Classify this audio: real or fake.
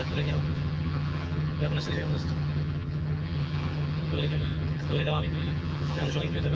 fake